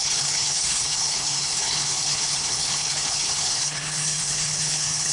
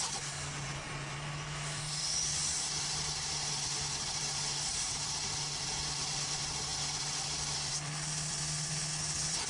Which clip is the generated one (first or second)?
first